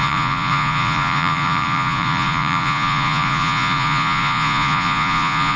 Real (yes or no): no